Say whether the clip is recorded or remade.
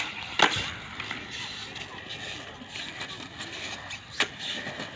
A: recorded